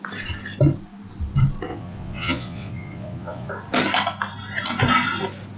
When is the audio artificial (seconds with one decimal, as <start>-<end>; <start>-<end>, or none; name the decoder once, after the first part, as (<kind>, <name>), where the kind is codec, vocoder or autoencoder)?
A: 1.7-3.5 (vocoder, Vocos)